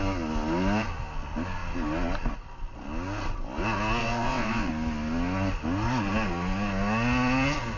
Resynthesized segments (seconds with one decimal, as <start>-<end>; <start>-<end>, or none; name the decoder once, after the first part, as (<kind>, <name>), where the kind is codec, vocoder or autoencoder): 4.0-4.7 (vocoder, WaveNeXt)